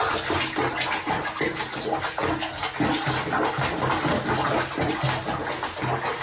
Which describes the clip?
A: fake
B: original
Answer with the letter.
B